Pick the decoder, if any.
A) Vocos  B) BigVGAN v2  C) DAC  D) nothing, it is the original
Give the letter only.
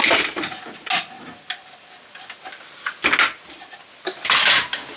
D